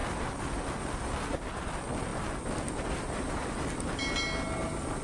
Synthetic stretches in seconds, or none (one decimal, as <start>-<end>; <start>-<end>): none